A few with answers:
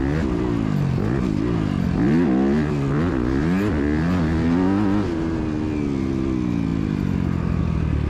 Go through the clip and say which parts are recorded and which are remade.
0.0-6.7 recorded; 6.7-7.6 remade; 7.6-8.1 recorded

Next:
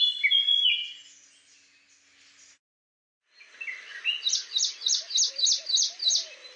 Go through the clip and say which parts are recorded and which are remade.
0.0-6.6 recorded